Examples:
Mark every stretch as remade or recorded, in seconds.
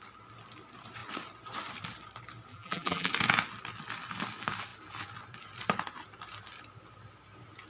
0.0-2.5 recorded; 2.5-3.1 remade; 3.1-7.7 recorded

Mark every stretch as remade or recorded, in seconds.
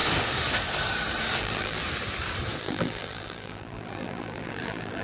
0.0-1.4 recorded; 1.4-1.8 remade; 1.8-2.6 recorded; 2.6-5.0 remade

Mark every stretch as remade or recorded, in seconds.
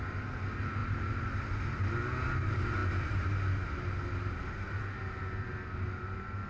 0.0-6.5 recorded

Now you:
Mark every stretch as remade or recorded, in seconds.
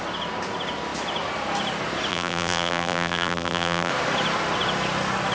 0.0-2.1 recorded; 2.1-3.9 remade; 3.9-5.3 recorded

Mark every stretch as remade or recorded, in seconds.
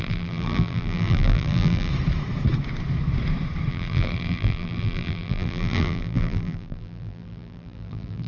0.0-1.9 remade; 1.9-3.7 recorded; 3.7-8.3 remade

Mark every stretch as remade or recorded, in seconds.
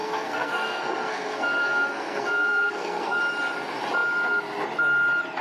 0.0-3.2 remade; 3.2-5.4 recorded